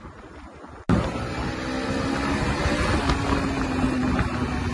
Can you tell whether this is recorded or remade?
recorded